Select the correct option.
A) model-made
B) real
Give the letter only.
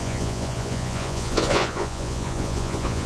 A